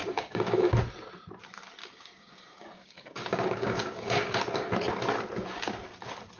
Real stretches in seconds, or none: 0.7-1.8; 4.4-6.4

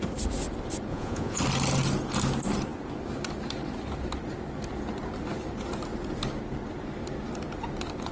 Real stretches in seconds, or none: 0.0-0.9; 1.4-8.1

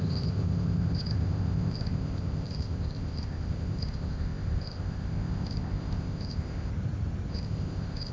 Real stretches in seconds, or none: 6.7-7.3

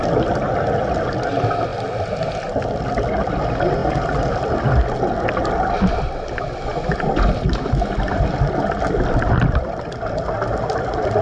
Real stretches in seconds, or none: 0.0-11.2

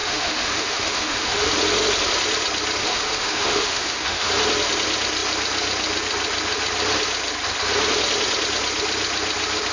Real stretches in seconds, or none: 1.5-2.8; 4.3-9.7

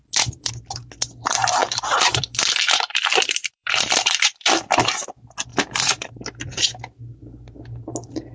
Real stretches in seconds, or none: 0.0-1.6; 4.8-5.5; 6.1-8.3

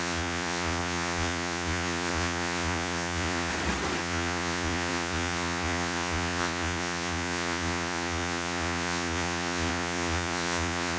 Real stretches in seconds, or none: 3.5-4.0